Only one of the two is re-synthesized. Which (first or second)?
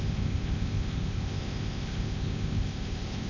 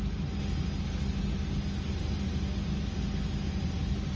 first